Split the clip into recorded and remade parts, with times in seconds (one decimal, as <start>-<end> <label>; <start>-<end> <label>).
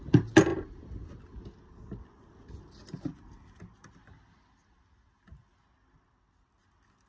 0.0-7.1 recorded